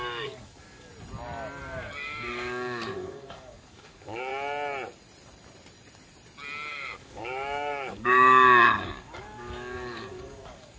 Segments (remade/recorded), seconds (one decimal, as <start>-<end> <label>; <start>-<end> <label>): 0.0-0.9 remade; 0.9-1.6 recorded; 1.6-4.3 remade; 4.3-6.7 recorded; 6.7-10.8 remade